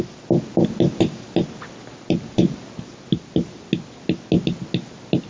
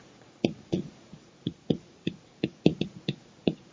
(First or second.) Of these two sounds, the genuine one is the first